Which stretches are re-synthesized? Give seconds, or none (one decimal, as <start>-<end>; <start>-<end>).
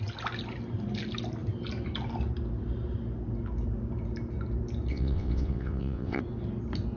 4.9-6.2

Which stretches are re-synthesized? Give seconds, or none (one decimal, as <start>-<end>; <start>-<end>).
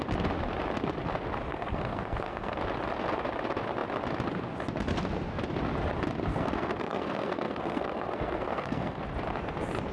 1.5-2.6; 6.3-9.0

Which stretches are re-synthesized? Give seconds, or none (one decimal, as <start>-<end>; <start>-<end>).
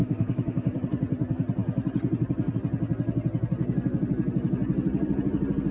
0.0-0.8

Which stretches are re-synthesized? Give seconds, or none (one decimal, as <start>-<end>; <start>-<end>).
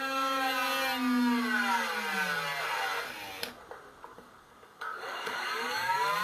4.1-6.2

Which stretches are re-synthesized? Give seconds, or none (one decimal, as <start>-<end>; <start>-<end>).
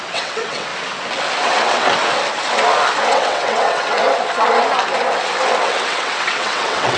0.0-0.7; 1.4-2.0; 3.1-4.0; 5.6-7.0